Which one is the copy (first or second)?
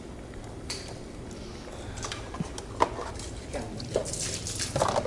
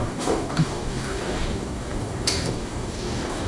second